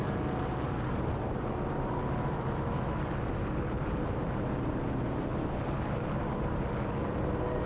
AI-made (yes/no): yes